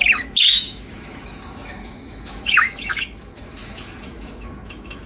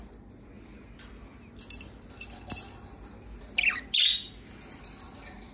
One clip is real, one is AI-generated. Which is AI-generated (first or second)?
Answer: first